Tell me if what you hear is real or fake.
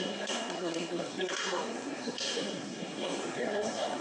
fake